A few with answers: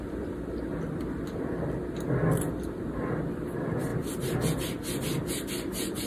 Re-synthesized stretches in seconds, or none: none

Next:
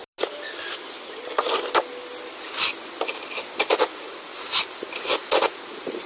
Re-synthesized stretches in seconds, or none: 3.7-4.3 (vocoder, Vocos); 5.0-6.1

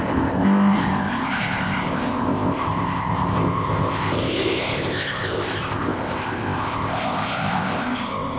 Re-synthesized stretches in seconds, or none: 0.0-8.4 (codec, ZipCodec)

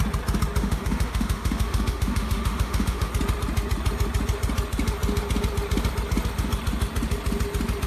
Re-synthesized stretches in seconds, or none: 0.6-3.1 (autoencoder, DAC-VAE)